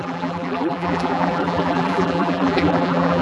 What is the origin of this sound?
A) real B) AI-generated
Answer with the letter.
B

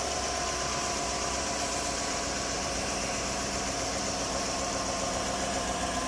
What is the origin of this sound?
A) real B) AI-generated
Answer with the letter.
B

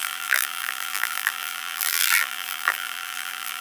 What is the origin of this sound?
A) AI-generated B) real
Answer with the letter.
A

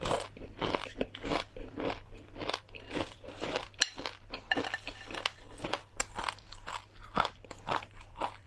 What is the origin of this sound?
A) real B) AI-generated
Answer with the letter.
B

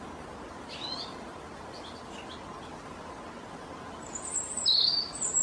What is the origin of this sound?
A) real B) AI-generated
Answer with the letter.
A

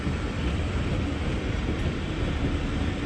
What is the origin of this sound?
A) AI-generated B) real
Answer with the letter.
B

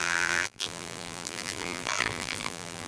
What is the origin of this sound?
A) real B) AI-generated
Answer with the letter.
B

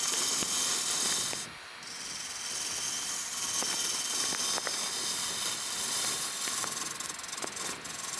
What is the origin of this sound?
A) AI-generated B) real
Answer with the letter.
B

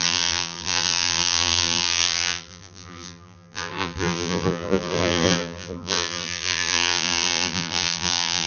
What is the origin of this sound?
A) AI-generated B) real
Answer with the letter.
A